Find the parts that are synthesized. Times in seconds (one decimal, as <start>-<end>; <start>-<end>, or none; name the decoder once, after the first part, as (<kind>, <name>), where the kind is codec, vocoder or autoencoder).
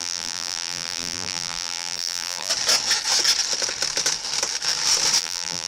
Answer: 0.0-2.5 (vocoder, BigVGAN v2); 5.2-5.7